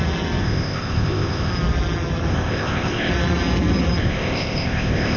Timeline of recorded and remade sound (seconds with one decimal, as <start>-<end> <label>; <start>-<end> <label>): 0.0-0.4 recorded; 0.4-1.5 remade; 1.5-2.3 recorded; 2.3-3.1 remade; 3.1-4.0 recorded; 4.0-5.2 remade